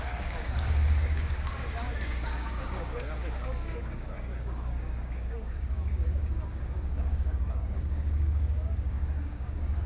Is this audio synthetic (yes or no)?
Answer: yes